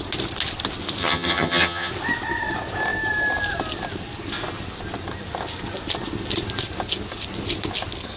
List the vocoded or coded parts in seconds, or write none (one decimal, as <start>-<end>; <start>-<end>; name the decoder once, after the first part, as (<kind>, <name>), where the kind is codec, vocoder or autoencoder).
1.0-1.9 (vocoder, HiFi-GAN)